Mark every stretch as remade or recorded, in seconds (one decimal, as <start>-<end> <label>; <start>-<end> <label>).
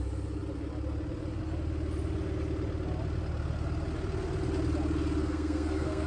0.0-5.2 recorded; 5.2-6.1 remade